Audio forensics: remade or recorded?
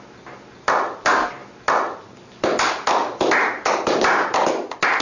recorded